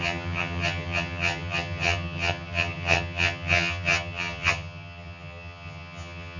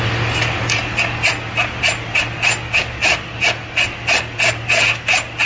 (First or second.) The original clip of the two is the second